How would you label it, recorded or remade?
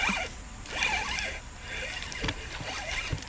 recorded